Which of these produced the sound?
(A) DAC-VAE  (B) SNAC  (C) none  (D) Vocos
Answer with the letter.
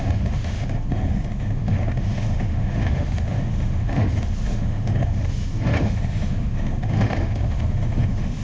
A